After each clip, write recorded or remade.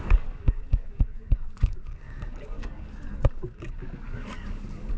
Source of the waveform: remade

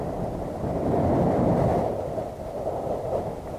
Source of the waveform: recorded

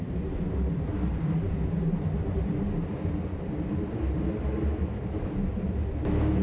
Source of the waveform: recorded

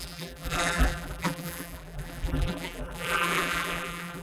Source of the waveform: remade